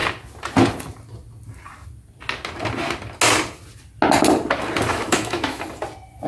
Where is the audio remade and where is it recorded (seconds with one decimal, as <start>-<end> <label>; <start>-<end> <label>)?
0.0-4.9 recorded; 4.9-5.6 remade; 5.6-6.3 recorded